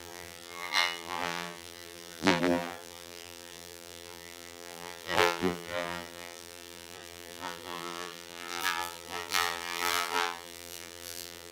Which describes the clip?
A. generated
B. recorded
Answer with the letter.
A